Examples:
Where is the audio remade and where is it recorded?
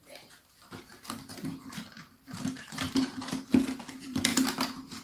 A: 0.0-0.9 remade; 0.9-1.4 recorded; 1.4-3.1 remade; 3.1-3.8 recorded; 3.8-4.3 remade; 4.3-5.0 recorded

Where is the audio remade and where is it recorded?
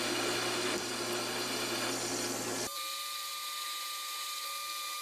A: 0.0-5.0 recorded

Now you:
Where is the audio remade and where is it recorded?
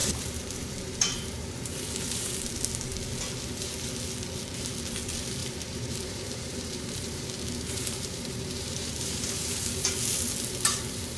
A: 0.0-2.3 remade; 2.3-5.4 recorded; 5.4-9.9 remade; 9.9-11.2 recorded